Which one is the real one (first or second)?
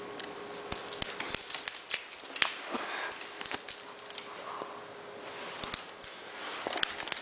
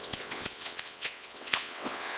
first